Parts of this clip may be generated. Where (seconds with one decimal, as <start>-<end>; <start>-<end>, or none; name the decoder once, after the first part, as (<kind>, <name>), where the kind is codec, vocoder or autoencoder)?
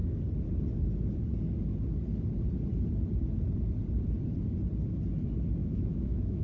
5.6-6.4 (autoencoder, DAC-VAE)